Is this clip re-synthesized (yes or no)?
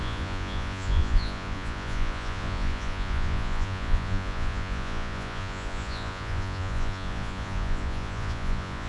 yes